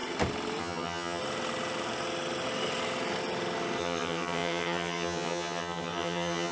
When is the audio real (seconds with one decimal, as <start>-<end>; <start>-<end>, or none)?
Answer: 0.0-0.6; 1.2-3.8